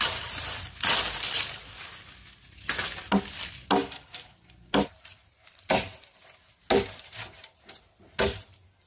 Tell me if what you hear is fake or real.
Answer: real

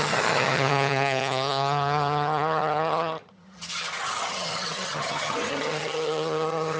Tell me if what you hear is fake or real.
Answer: fake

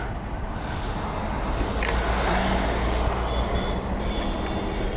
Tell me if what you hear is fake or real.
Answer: real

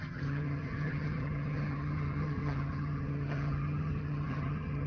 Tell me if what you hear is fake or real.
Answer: fake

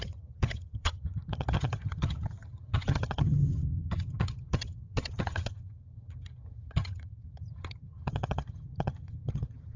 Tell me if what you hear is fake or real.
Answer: fake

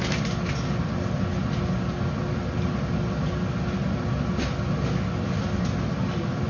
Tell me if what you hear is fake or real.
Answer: real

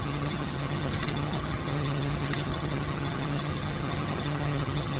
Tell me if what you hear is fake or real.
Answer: fake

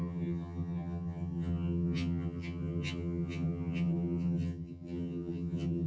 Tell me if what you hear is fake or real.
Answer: fake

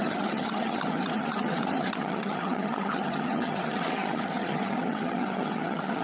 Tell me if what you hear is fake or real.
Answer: fake